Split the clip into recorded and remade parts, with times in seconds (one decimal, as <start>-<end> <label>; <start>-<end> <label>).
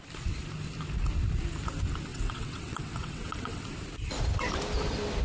0.0-2.1 recorded; 2.1-3.6 remade; 3.6-5.2 recorded